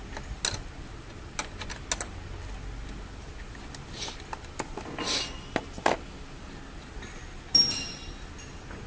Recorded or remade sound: recorded